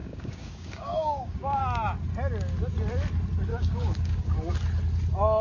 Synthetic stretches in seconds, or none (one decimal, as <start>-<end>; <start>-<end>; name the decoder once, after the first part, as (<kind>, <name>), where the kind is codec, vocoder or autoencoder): 0.0-1.6 (codec, DAC); 3.5-4.5